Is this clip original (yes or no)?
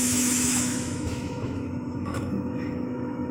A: no